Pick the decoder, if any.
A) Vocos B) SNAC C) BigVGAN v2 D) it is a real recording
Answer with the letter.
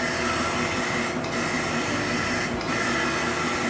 D